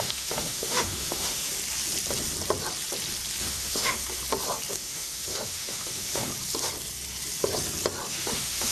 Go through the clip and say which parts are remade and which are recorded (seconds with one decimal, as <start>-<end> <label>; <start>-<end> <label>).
0.0-1.5 remade; 1.5-3.4 recorded; 3.4-4.2 remade; 4.2-4.7 recorded; 4.7-6.3 remade; 6.3-8.1 recorded; 8.1-8.7 remade